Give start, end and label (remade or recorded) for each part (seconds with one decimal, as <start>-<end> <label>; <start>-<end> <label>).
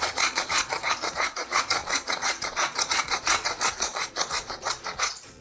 0.0-5.4 remade